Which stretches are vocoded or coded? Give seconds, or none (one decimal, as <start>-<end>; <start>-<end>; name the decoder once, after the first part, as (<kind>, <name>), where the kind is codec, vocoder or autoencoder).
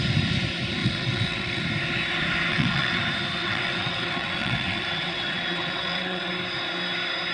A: 0.8-1.6 (vocoder, WaveNeXt); 2.5-3.0; 3.4-6.3